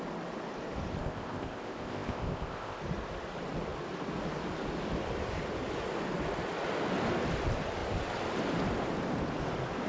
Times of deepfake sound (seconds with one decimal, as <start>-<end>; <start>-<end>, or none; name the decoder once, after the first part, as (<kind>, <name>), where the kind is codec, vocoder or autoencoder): 1.0-2.8 (codec, ZipCodec)